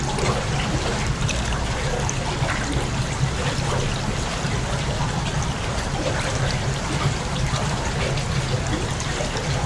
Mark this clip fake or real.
real